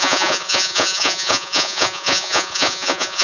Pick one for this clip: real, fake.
fake